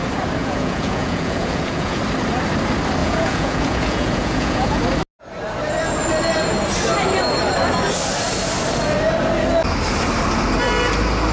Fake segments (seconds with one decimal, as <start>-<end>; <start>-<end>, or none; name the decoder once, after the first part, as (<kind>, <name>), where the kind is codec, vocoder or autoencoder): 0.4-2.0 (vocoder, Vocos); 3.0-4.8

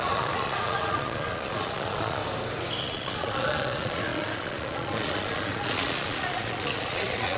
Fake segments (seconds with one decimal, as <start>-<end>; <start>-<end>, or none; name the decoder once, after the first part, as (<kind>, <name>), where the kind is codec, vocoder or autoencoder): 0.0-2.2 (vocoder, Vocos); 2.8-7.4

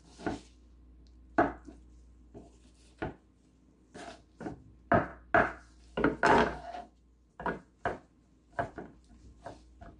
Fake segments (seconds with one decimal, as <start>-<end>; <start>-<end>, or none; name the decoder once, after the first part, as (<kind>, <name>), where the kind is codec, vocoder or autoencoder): none

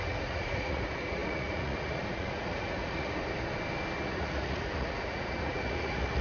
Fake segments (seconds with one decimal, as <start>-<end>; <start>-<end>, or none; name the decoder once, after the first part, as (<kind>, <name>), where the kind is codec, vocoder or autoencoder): 0.0-3.2 (vocoder, Vocos); 4.0-6.2

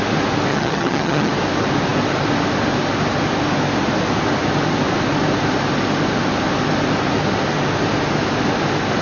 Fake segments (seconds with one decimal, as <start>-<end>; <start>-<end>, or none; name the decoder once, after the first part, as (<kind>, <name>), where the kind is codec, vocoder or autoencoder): 0.5-1.3 (vocoder, HiFi-GAN)

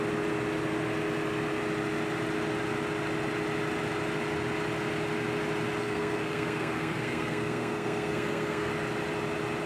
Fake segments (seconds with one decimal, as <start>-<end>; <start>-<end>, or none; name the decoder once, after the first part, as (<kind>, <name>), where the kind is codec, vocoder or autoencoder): 5.8-8.7 (codec, SNAC)